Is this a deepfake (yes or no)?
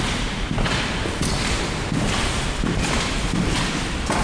no